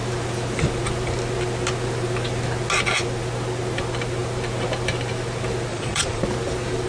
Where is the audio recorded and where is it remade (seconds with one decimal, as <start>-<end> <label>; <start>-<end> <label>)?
0.0-5.7 recorded; 5.7-6.2 remade; 6.2-6.9 recorded